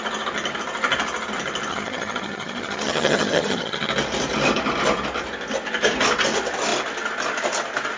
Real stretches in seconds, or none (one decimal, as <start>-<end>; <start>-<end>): 0.0-1.7; 3.9-8.0